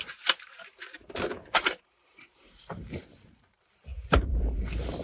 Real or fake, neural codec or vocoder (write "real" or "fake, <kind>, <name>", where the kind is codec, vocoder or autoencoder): fake, vocoder, BigVGAN v2